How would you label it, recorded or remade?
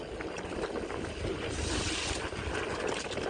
recorded